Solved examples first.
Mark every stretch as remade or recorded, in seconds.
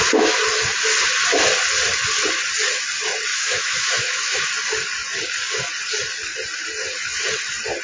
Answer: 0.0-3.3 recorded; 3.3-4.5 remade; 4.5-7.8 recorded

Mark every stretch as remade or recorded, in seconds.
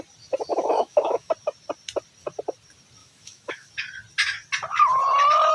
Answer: 0.0-0.5 recorded; 0.5-1.3 remade; 1.3-3.0 recorded; 3.0-3.7 remade; 3.7-5.5 recorded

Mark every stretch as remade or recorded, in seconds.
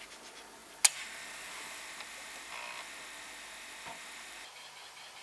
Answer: 0.0-5.2 recorded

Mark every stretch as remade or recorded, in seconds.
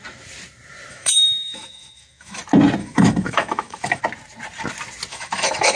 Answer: 0.0-0.9 recorded; 0.9-2.4 remade; 2.4-2.8 recorded; 2.8-4.0 remade; 4.0-5.1 recorded; 5.1-5.8 remade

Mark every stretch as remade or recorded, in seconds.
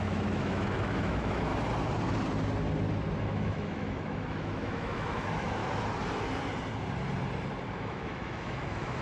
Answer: 0.0-1.5 remade; 1.5-3.2 recorded; 3.2-5.6 remade; 5.6-7.7 recorded; 7.7-9.0 remade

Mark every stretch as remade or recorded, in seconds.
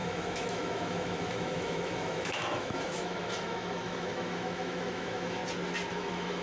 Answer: 0.0-5.4 remade; 5.4-5.9 recorded; 5.9-6.4 remade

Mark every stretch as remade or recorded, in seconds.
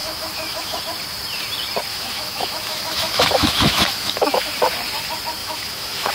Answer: 0.0-0.8 remade; 0.8-1.9 recorded; 1.9-4.6 remade; 4.6-5.4 recorded; 5.4-6.1 remade